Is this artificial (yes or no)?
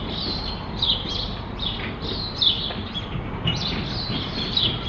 yes